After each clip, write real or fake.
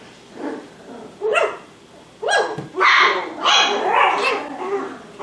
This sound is real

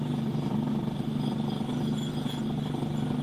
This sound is real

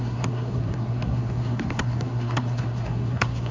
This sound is fake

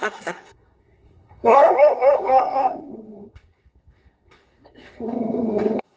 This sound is fake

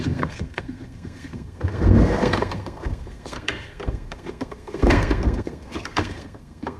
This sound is fake